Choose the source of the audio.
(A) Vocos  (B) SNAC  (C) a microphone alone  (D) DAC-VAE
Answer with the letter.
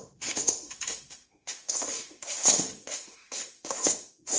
D